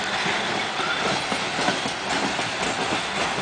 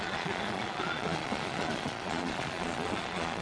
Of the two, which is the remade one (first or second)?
second